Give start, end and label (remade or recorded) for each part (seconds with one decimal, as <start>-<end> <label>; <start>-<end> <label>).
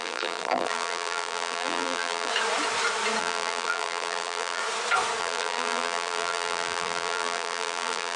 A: 0.0-2.3 remade; 2.3-3.2 recorded; 3.2-4.6 remade; 4.6-5.2 recorded; 5.2-8.2 remade